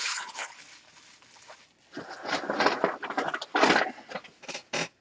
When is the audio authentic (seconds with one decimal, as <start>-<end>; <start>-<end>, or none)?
0.6-5.0